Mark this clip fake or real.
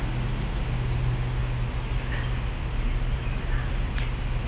real